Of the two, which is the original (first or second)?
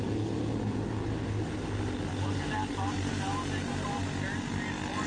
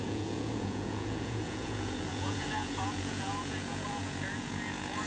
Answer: first